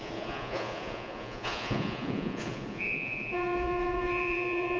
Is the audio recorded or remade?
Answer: remade